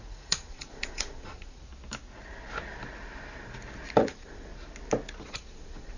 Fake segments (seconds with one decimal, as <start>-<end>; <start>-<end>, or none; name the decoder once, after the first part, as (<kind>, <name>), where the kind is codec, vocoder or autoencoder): 0.0-1.7 (vocoder, Vocos); 4.0-4.5; 5.2-6.0